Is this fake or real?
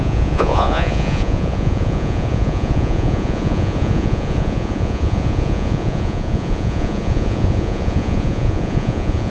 fake